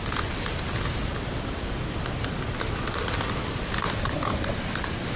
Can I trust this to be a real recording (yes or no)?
yes